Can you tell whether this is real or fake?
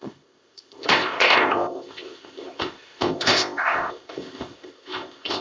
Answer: fake